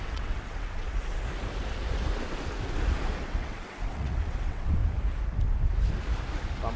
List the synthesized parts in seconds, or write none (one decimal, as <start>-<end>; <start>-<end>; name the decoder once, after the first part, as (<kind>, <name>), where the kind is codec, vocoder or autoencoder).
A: 0.0-0.9 (vocoder, WaveNeXt); 3.2-4.8